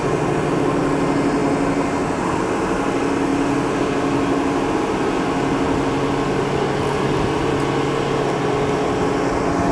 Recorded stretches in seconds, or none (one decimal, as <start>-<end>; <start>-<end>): 0.0-9.7